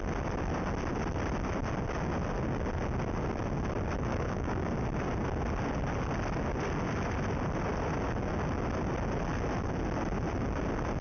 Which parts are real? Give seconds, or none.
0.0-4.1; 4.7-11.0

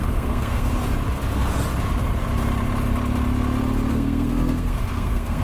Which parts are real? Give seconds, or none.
0.7-3.9

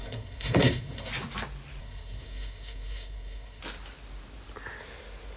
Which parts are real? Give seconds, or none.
1.1-1.8; 3.6-5.4

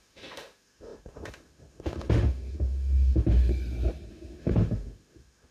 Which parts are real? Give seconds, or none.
3.5-4.1

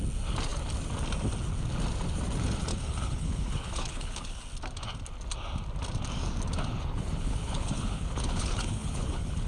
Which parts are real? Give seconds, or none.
0.0-2.7; 4.4-6.7